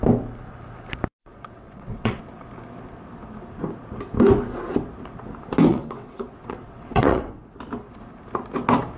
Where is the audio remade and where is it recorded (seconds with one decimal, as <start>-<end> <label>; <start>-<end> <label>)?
0.0-1.2 recorded; 1.2-2.2 remade; 2.2-5.7 recorded; 5.7-7.4 remade; 7.4-9.0 recorded